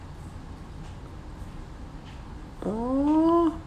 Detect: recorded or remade recorded